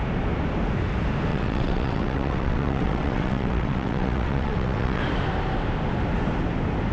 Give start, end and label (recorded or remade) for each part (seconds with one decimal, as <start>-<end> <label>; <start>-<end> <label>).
0.0-1.3 recorded; 1.3-5.0 remade; 5.0-6.9 recorded